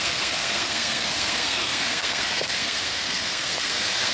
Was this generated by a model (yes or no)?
yes